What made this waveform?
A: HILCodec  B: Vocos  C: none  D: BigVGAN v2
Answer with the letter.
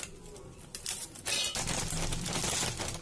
C